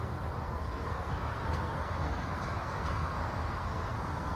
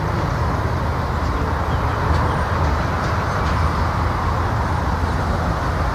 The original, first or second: second